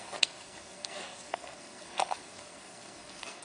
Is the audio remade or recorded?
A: remade